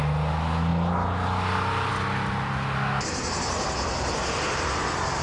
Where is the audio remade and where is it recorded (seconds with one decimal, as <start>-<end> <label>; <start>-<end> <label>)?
0.0-5.2 recorded